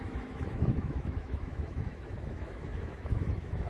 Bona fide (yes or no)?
no